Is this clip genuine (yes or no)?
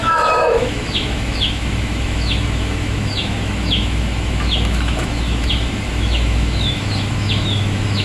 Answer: no